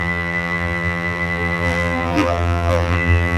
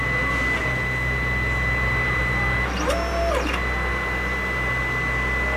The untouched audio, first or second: second